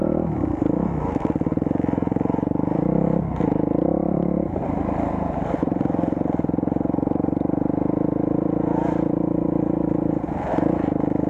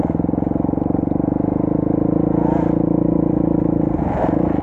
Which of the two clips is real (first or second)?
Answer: second